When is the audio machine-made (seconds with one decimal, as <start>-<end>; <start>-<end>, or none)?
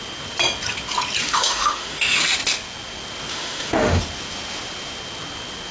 1.2-2.2; 3.3-4.0